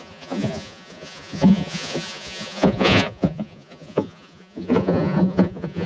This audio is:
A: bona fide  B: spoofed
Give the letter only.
B